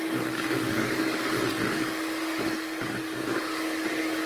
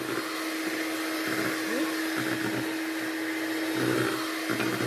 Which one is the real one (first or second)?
second